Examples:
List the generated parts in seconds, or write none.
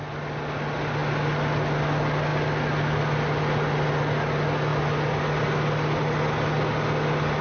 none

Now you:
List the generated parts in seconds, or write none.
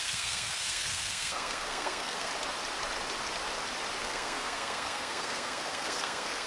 0.0-2.3 (codec, SNAC); 4.0-6.5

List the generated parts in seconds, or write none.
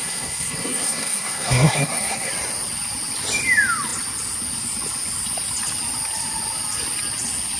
0.0-2.3 (codec, SNAC)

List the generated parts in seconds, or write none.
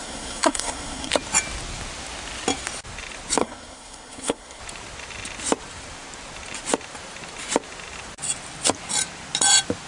0.0-1.1 (codec, SNAC); 3.4-4.6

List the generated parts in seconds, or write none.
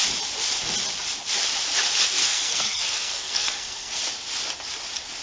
2.2-4.0 (codec, SNAC)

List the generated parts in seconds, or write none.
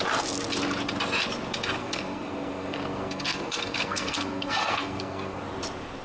1.8-5.4 (codec, SNAC)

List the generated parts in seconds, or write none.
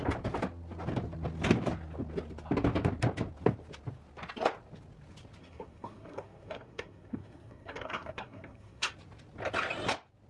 5.4-8.9 (codec, SNAC)